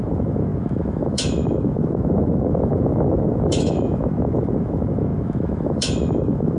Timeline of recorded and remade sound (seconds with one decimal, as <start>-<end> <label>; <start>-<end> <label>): 0.0-6.6 remade